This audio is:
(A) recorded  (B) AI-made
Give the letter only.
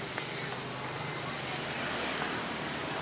A